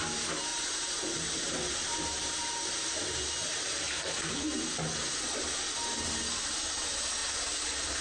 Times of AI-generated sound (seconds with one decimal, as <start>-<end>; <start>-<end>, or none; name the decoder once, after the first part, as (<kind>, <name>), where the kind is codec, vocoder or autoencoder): 0.5-4.3 (vocoder, BigVGAN v2)